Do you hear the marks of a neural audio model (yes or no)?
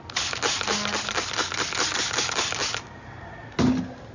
no